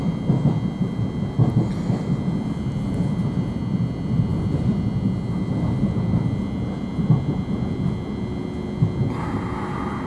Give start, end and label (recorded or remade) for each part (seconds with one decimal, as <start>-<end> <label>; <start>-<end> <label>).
0.0-10.1 recorded